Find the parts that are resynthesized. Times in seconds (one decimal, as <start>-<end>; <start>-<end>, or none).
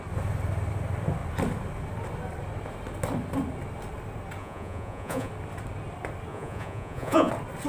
4.4-5.3; 6.3-7.3